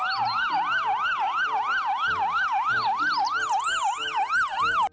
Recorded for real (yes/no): yes